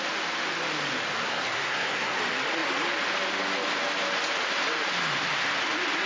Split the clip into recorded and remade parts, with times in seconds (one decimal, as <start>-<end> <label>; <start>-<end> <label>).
0.0-1.2 recorded; 1.2-2.2 remade; 2.2-6.1 recorded